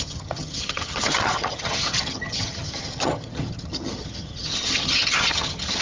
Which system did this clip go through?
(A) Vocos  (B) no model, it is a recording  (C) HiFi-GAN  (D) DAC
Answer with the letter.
C